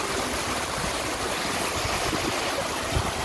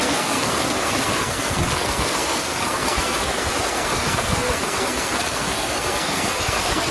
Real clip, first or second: first